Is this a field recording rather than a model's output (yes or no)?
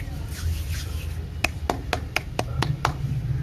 yes